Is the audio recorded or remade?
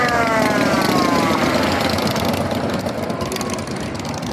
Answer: recorded